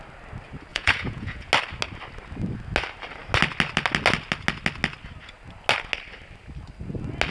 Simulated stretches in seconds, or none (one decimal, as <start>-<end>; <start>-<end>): 0.7-1.5